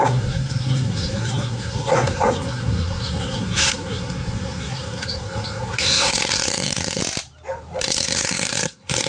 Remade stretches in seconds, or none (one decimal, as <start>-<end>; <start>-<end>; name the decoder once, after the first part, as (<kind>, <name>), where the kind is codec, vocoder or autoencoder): 0.0-7.0 (codec, SNAC); 7.8-9.1

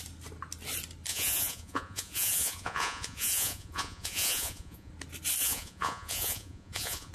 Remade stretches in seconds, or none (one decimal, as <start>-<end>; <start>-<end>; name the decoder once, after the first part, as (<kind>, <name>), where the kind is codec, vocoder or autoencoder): 1.1-4.9 (vocoder, Vocos); 5.4-7.1